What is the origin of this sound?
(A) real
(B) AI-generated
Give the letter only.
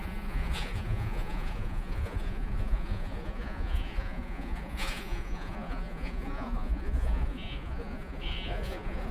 B